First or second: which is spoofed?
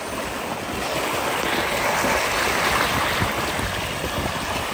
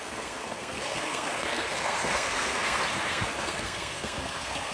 second